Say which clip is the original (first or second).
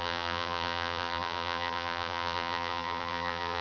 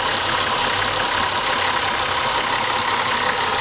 second